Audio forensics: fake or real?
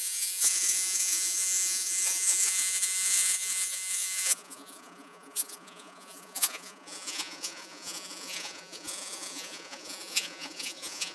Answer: fake